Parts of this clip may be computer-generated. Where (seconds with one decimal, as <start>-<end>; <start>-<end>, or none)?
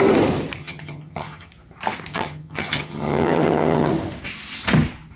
0.6-1.5; 2.1-3.9